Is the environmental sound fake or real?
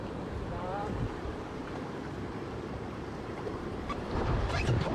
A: fake